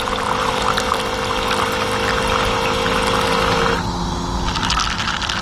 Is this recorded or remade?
recorded